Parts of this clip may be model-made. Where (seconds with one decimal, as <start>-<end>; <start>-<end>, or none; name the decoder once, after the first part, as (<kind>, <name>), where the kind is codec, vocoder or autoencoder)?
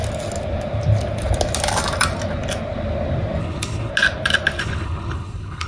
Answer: 3.4-3.9 (codec, HILCodec); 4.6-5.7